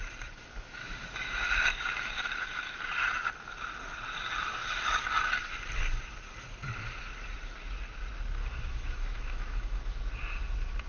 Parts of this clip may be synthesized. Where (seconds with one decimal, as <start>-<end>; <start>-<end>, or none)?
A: 0.8-1.5; 8.4-10.0